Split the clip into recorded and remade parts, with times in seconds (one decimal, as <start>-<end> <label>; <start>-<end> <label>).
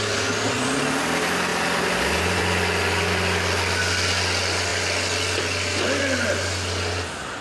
0.0-7.4 recorded